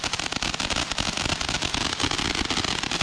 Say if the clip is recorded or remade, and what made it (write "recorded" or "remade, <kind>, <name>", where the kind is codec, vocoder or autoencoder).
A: recorded